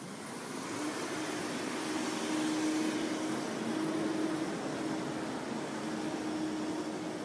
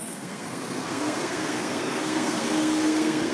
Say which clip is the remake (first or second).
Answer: second